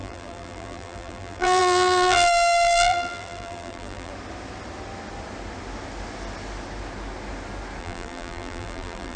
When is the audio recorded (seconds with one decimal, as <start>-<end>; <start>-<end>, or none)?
4.1-7.8